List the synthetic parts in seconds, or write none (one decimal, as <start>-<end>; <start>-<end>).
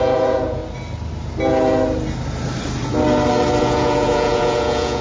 0.0-0.6; 3.6-5.0